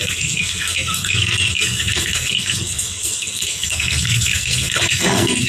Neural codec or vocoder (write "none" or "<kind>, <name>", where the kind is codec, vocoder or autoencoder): codec, SNAC